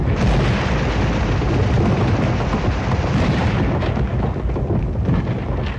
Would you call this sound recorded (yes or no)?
yes